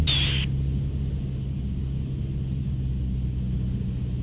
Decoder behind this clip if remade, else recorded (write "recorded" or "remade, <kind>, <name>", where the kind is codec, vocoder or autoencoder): recorded